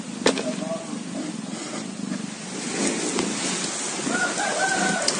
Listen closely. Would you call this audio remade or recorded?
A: recorded